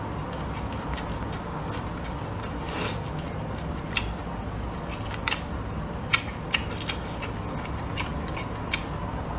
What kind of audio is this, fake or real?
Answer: real